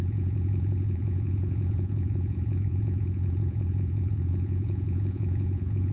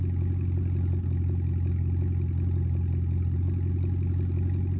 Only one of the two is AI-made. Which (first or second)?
first